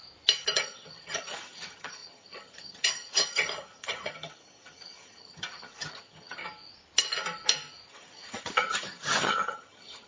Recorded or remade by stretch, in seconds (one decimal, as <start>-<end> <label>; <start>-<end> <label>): 0.0-0.6 recorded; 0.6-6.4 remade; 6.4-7.9 recorded; 7.9-10.1 remade